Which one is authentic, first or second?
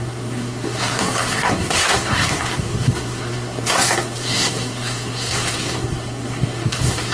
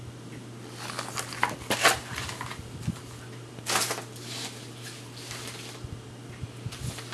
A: second